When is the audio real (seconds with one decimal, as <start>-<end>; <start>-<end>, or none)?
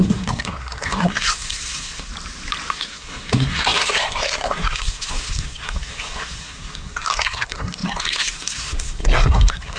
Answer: 2.1-2.7